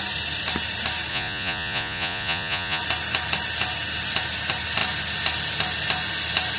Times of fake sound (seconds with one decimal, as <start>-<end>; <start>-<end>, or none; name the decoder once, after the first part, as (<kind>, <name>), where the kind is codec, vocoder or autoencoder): 1.1-2.8 (vocoder, Vocos)